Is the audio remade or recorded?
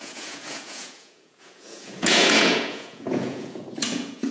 remade